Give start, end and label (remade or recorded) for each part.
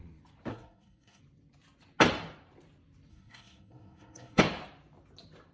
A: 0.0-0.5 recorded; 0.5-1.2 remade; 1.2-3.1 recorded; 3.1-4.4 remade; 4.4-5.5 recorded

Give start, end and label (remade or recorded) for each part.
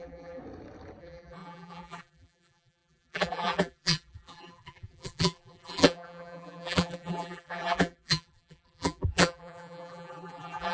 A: 0.0-0.4 remade; 0.4-1.0 recorded; 1.0-10.7 remade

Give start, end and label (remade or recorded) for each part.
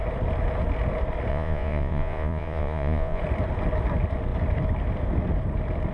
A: 0.0-1.3 recorded; 1.3-3.2 remade; 3.2-5.9 recorded